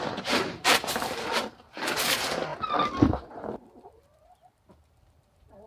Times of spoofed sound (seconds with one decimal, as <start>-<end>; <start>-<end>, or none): 0.0-2.5; 3.3-5.7